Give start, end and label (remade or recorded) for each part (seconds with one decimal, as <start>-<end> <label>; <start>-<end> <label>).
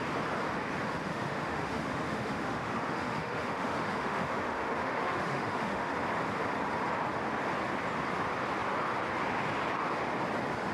0.0-1.1 recorded; 1.1-5.9 remade; 5.9-10.7 recorded